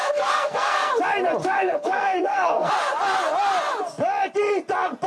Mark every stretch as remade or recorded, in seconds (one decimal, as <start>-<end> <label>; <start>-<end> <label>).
0.0-0.9 remade; 0.9-1.4 recorded; 1.4-2.7 remade; 2.7-5.1 recorded